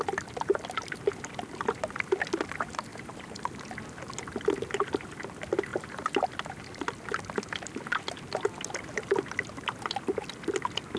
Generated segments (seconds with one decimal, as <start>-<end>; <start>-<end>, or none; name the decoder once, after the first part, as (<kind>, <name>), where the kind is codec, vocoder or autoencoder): 2.9-3.6 (vocoder, BigVGAN v2); 5.7-6.3